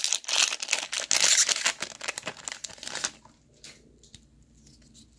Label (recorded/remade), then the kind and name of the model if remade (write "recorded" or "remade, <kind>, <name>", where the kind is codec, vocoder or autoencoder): recorded